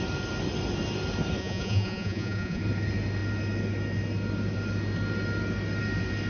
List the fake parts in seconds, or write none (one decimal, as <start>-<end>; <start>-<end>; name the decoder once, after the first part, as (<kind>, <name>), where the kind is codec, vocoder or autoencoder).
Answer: 1.4-2.6 (vocoder, Vocos)